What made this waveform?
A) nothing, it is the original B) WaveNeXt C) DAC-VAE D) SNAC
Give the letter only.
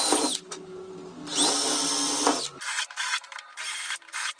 A